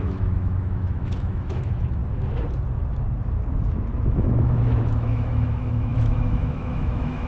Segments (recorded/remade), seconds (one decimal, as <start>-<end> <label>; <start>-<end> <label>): 0.0-2.0 remade; 2.0-3.9 recorded; 3.9-7.3 remade